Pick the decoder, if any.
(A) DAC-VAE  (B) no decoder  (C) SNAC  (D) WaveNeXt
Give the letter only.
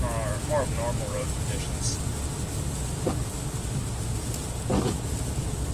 B